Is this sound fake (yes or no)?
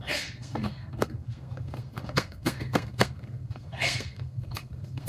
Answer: yes